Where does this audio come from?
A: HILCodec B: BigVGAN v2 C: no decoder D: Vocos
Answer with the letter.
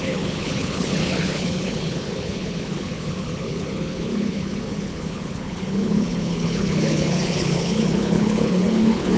A